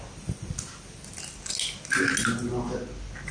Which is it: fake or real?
real